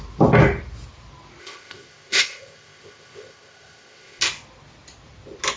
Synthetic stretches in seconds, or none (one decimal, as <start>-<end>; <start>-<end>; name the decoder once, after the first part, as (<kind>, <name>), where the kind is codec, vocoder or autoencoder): 1.4-4.2 (codec, ZipCodec)

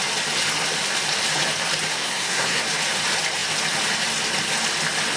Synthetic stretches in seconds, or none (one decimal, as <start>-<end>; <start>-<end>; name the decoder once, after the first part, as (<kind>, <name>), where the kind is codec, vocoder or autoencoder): 1.9-2.6 (codec, SNAC)

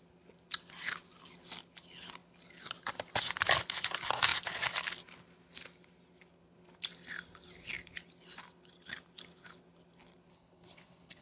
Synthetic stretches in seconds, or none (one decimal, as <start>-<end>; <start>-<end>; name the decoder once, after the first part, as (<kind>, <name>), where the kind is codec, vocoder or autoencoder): 10.3-11.2 (codec, HILCodec)

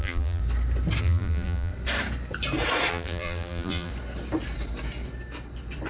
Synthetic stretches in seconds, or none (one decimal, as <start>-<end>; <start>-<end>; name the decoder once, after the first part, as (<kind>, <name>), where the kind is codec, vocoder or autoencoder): 0.0-0.4 (vocoder, BigVGAN v2); 1.0-1.7; 2.9-3.9

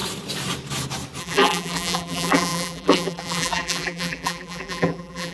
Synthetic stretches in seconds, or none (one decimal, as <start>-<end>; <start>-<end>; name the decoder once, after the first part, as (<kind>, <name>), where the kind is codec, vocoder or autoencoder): 1.2-5.3 (vocoder, BigVGAN v2)

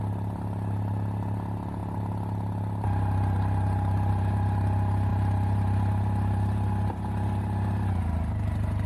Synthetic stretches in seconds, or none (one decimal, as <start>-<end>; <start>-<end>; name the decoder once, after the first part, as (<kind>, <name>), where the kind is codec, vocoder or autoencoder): none